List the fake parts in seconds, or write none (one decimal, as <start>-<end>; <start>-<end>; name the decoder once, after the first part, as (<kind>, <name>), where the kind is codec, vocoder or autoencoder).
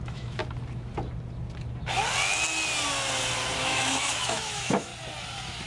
0.0-0.4 (autoencoder, DAC-VAE); 3.6-4.9